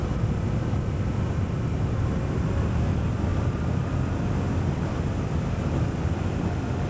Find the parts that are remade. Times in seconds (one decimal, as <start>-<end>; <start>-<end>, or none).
3.3-3.8

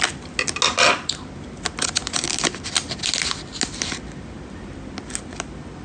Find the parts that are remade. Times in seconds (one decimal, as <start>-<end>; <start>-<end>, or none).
none

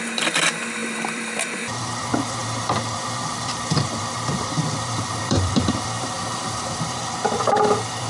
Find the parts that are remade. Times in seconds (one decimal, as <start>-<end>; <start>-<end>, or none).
0.0-8.1

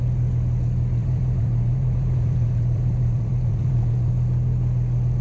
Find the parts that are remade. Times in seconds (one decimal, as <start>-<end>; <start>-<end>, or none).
1.0-4.1

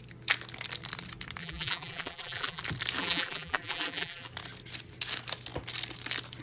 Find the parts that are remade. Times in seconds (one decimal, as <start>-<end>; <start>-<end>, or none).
1.4-2.6; 3.0-4.3

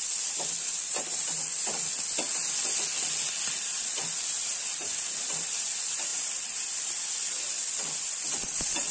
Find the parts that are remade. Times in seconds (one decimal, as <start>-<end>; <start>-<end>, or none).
0.0-2.4; 3.6-8.9